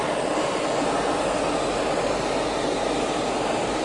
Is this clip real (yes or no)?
yes